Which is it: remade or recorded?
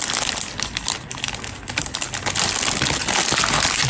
recorded